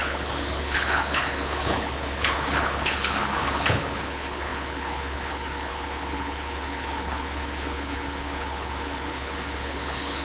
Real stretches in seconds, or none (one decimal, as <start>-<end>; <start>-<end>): none